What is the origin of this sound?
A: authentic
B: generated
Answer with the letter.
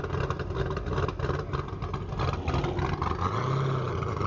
A